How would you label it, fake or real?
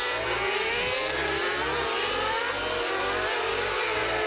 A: real